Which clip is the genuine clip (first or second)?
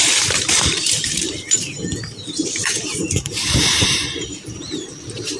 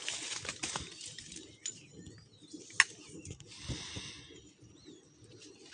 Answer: second